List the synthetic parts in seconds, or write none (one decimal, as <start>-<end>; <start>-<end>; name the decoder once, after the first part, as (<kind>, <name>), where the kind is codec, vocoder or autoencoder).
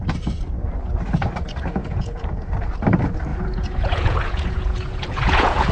1.8-2.5 (vocoder, Vocos); 3.3-5.7